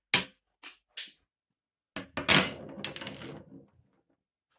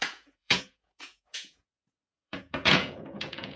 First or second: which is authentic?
first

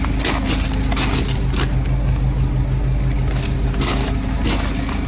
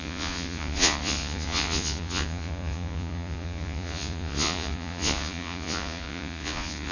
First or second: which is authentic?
first